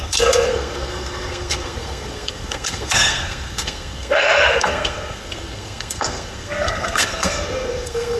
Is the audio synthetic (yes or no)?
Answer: yes